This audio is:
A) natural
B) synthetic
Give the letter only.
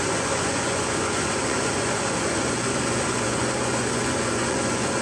B